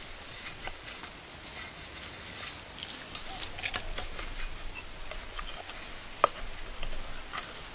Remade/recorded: recorded